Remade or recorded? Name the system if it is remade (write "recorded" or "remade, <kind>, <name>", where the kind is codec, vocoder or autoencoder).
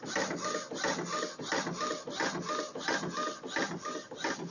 recorded